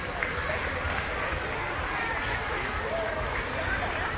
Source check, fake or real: real